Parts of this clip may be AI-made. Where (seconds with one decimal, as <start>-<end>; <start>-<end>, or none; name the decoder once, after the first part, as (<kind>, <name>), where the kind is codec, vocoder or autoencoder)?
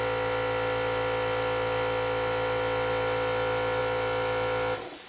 none